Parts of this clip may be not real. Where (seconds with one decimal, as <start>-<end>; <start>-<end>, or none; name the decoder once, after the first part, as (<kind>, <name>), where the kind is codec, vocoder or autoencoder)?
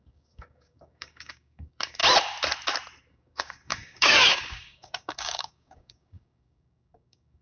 0.0-2.0 (codec, DAC); 3.1-7.4